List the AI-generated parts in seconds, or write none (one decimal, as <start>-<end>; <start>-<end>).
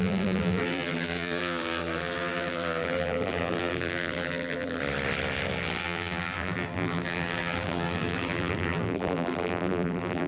0.0-4.8; 5.8-10.3